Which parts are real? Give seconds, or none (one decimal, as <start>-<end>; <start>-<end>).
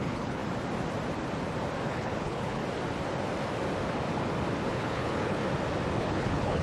0.4-1.9; 2.6-4.7; 5.4-5.9